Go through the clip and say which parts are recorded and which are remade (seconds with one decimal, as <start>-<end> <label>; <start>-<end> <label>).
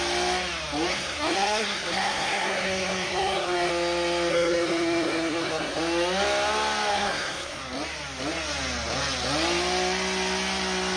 0.0-0.9 recorded; 0.9-3.7 remade; 3.7-4.3 recorded; 4.3-5.8 remade; 5.8-6.9 recorded; 6.9-7.6 remade; 7.6-11.0 recorded